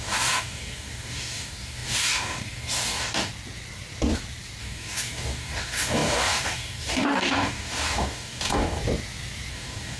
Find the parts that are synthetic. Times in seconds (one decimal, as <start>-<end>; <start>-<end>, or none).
0.0-3.3; 4.6-8.8; 9.5-10.0